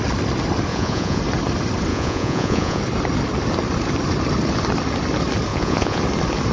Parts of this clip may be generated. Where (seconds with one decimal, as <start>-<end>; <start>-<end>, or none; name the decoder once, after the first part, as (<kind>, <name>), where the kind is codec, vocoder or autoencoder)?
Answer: 0.7-1.2 (vocoder, Vocos); 1.9-2.8; 5.5-6.0